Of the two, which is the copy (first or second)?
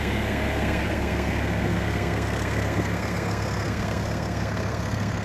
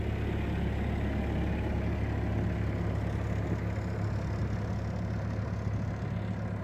first